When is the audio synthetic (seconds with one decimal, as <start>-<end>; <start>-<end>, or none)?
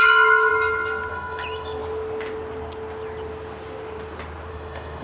0.0-0.5; 1.1-1.8; 4.5-5.0